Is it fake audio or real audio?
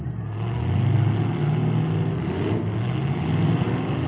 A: real